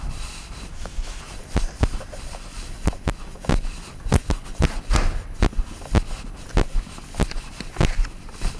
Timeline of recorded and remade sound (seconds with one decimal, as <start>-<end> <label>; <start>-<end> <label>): 0.0-0.7 recorded; 0.7-1.2 remade; 1.2-8.6 recorded